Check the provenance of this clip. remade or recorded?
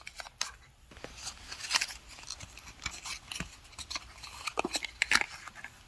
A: recorded